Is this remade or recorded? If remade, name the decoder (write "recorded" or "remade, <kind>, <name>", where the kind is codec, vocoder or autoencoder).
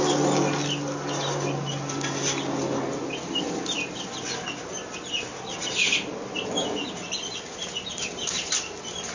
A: recorded